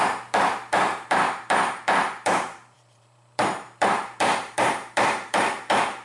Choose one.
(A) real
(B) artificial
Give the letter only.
B